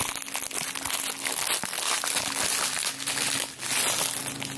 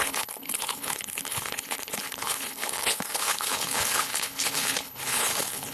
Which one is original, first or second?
first